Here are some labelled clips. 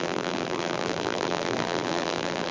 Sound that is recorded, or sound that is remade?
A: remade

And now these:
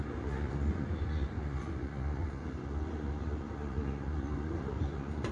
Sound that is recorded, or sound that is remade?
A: remade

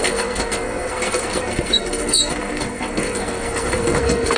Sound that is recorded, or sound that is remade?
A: remade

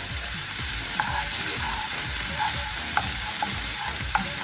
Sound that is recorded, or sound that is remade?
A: remade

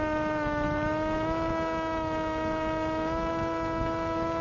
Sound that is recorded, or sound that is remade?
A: remade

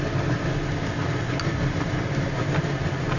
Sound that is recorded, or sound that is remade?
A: recorded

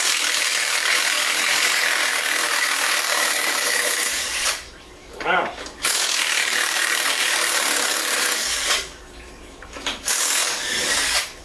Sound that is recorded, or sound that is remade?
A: remade